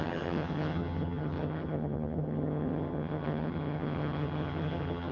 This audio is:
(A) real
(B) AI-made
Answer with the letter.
B